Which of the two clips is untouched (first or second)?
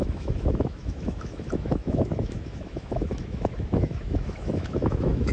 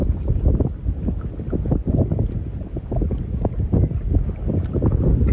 second